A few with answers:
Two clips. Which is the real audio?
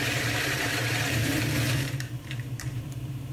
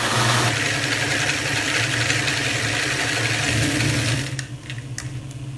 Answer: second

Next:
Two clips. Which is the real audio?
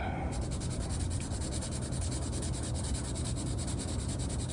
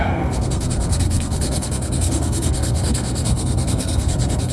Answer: first